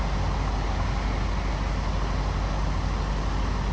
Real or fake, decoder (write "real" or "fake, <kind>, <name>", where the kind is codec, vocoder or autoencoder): real